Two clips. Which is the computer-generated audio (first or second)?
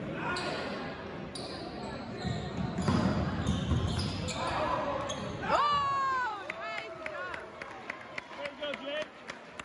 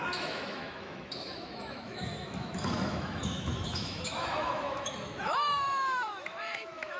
second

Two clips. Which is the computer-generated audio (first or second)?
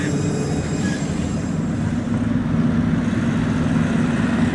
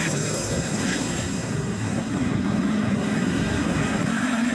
second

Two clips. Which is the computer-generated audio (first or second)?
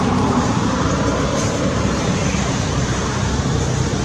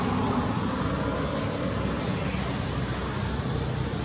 first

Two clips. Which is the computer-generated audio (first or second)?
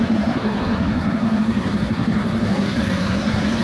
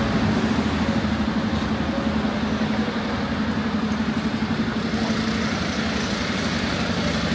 first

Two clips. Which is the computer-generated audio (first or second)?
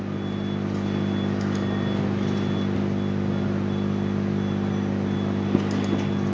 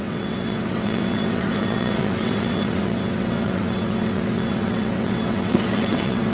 second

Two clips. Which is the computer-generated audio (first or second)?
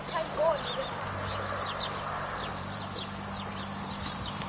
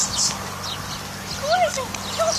first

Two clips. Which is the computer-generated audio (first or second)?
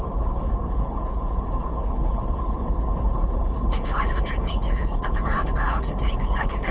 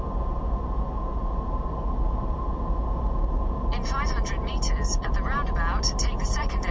first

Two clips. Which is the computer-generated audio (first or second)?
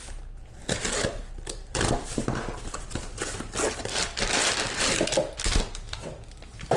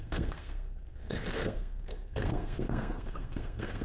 second